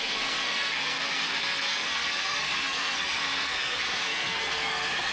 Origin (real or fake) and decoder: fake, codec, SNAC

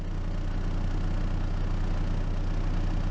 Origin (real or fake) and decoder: real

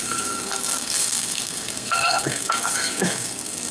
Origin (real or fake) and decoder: fake, codec, SNAC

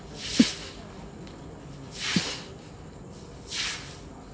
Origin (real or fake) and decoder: real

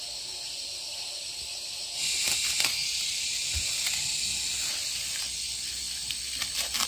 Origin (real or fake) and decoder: real